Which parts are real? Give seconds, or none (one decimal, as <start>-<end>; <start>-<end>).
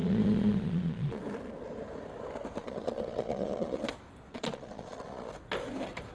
1.2-2.6; 3.8-4.3; 5.3-6.1